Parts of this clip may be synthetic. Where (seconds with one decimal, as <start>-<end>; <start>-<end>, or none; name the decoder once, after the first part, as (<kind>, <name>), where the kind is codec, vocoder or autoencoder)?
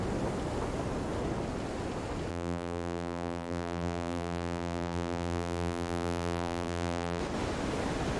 2.3-7.2 (vocoder, BigVGAN v2)